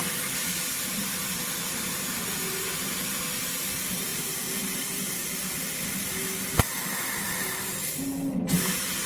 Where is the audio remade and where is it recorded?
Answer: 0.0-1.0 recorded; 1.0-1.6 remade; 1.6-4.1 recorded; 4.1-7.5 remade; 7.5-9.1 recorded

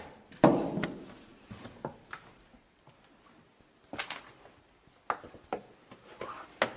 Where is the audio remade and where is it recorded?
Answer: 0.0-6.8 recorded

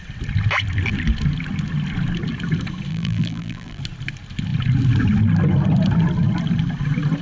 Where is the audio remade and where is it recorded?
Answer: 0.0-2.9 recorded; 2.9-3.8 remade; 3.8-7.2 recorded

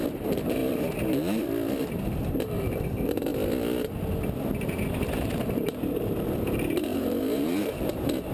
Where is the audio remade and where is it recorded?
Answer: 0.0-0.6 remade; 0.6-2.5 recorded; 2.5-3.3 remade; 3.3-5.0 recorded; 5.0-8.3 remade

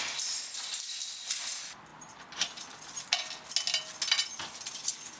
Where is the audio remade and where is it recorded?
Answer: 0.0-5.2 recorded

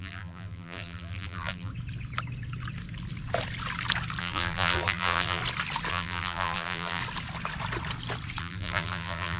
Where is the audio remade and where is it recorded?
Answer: 0.0-1.7 remade; 1.7-4.2 recorded; 4.2-5.4 remade; 5.4-5.9 recorded; 5.9-7.0 remade; 7.0-8.4 recorded; 8.4-9.4 remade